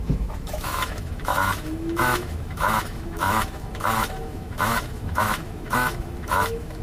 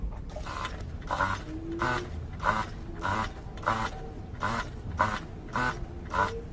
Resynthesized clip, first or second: first